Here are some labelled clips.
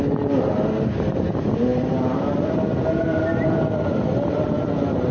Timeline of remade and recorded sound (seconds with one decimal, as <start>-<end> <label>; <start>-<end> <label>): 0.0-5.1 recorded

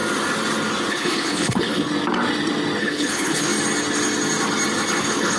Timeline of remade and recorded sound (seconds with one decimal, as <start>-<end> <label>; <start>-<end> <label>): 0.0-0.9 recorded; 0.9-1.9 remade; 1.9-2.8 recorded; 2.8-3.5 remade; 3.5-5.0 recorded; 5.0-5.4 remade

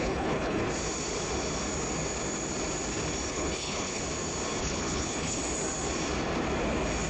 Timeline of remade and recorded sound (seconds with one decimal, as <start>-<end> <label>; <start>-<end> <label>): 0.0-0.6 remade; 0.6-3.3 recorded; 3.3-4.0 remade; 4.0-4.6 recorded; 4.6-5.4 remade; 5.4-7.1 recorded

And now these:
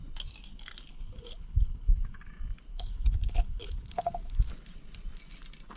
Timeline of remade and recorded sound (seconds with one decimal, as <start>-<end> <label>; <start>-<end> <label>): 0.0-0.9 recorded; 0.9-2.3 remade; 2.3-2.7 recorded; 2.7-4.5 remade; 4.5-5.8 recorded